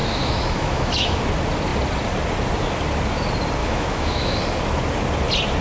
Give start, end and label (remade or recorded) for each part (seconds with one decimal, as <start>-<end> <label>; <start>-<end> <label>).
0.0-1.2 remade; 1.2-3.6 recorded; 3.6-4.4 remade; 4.4-5.6 recorded